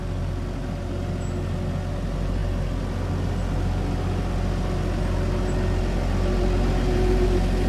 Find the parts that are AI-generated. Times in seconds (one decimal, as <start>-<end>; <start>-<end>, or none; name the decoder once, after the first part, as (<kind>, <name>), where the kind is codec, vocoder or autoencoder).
none